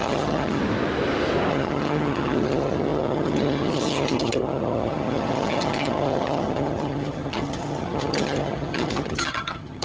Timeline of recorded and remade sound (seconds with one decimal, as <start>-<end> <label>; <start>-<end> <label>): 0.0-0.6 remade; 0.6-1.5 recorded; 1.5-9.8 remade